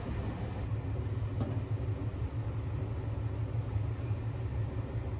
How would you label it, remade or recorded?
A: recorded